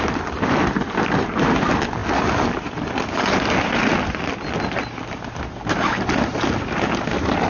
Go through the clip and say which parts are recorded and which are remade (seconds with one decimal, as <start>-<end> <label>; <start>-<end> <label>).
0.0-7.5 recorded